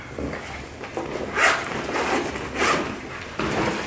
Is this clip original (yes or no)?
yes